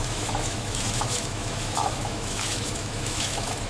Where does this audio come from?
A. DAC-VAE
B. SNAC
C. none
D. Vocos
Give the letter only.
A